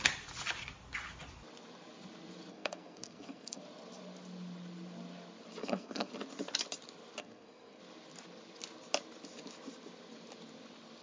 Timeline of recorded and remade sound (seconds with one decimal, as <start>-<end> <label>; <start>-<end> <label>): 0.0-2.5 recorded; 2.5-3.6 remade; 3.6-5.6 recorded; 5.6-6.1 remade; 6.1-7.2 recorded; 7.2-7.8 remade; 7.8-11.0 recorded